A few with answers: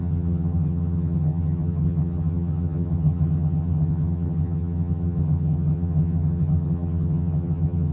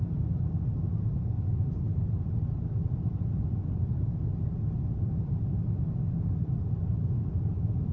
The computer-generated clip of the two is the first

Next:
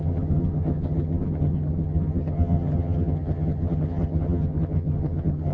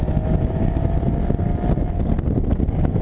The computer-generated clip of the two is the first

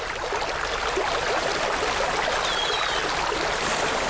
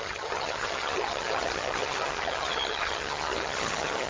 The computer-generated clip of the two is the second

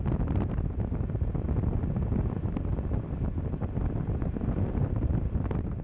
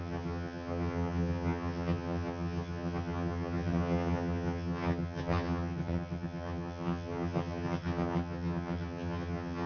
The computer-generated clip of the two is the second